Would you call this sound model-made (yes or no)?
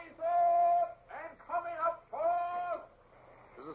no